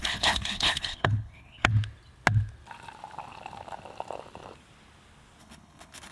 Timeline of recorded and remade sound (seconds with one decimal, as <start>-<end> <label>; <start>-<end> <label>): 0.0-1.7 remade; 1.7-5.4 recorded; 5.4-6.1 remade